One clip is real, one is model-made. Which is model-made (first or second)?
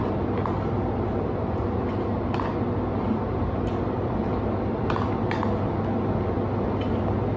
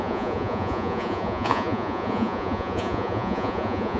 second